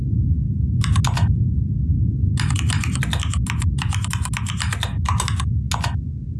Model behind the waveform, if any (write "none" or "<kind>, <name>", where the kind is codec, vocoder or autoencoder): none